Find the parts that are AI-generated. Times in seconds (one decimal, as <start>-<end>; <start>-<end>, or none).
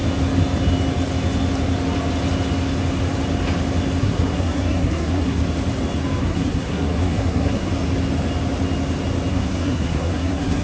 4.0-5.4; 6.2-7.7; 9.3-10.6